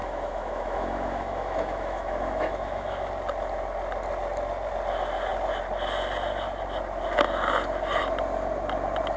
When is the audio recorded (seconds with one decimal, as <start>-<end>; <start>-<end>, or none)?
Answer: 3.1-9.2